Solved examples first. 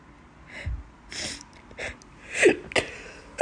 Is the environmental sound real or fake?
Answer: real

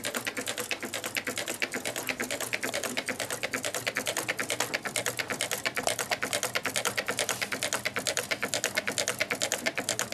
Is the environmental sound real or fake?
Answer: real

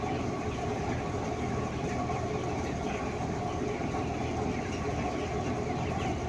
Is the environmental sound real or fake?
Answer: real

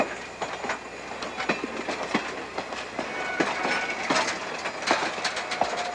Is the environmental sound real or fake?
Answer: real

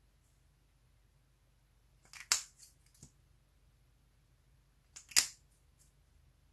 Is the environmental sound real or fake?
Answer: real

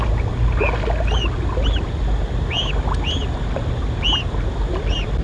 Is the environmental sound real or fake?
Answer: real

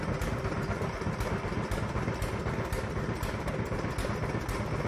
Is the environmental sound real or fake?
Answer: real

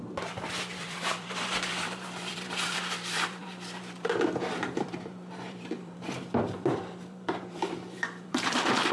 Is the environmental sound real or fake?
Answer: fake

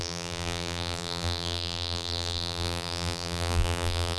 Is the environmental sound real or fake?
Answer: fake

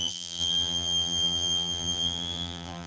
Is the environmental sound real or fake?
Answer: fake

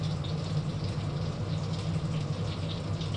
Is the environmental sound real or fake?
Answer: real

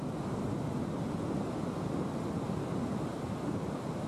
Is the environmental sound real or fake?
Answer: real